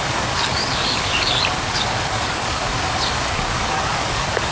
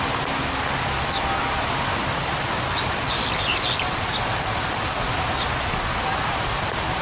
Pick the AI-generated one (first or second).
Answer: first